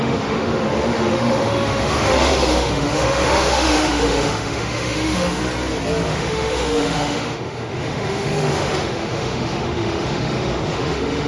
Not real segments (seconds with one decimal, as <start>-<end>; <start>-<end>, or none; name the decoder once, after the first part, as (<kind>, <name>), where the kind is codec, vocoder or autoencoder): 0.0-5.4 (autoencoder, DAC-VAE); 6.1-11.3